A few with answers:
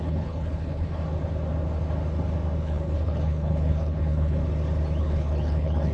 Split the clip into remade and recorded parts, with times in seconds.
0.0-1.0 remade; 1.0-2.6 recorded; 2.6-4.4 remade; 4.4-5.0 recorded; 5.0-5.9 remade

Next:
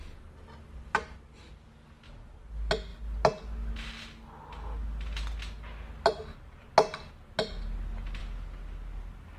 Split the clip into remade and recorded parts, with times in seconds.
0.0-9.4 recorded

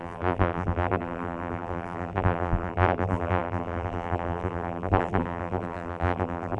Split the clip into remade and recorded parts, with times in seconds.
0.0-6.6 remade

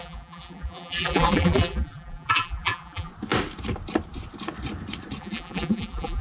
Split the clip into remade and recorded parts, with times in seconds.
0.0-3.1 remade; 3.1-5.2 recorded; 5.2-6.2 remade